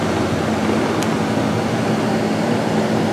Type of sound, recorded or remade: recorded